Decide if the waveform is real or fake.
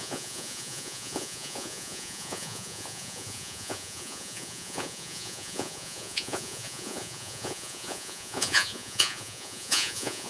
fake